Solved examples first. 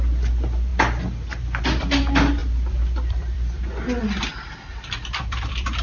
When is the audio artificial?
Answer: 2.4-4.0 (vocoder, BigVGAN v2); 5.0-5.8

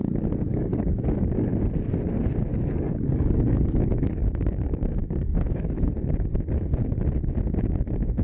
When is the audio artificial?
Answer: 0.5-1.5 (codec, DAC); 2.5-5.9

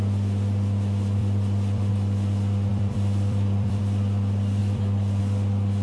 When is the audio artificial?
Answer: 1.2-1.9 (vocoder, BigVGAN v2); 2.7-3.8; 4.6-5.2